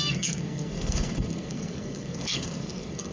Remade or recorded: remade